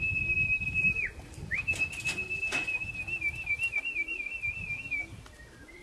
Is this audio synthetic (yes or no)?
yes